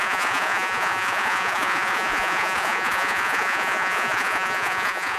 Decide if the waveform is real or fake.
fake